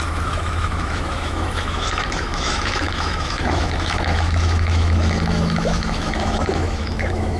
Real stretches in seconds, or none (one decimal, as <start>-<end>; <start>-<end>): none